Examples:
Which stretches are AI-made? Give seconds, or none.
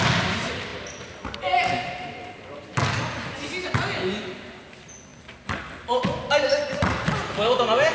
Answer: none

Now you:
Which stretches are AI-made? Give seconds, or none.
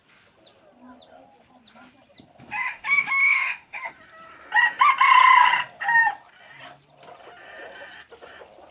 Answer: 2.6-3.9 (autoencoder, DAC-VAE)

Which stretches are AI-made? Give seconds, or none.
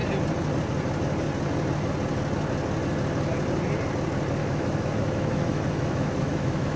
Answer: 4.4-6.8 (autoencoder, DAC-VAE)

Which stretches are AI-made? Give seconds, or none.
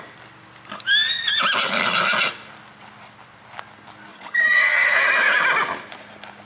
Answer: 4.1-4.9 (vocoder, HiFi-GAN)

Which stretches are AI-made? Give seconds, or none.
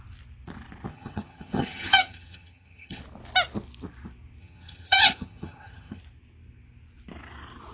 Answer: 0.9-3.0 (vocoder, HiFi-GAN); 4.4-6.0